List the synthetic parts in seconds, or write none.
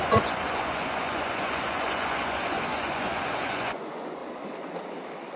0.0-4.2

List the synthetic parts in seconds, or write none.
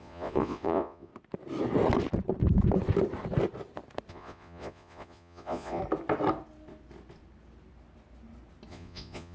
0.0-1.1; 4.1-5.8; 8.7-9.3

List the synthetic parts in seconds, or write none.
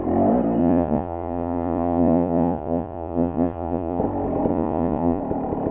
0.6-4.0; 4.5-5.2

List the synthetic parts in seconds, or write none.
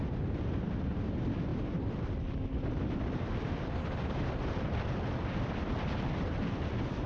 none